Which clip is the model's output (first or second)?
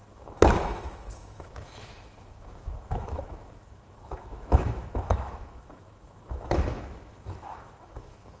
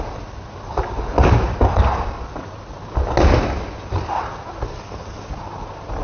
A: first